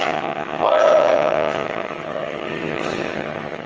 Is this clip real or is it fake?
fake